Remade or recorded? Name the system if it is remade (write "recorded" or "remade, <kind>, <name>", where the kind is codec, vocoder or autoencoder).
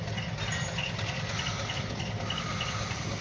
recorded